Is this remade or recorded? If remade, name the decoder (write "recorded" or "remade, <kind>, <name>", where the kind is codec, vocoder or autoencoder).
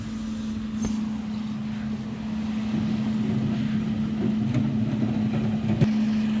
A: recorded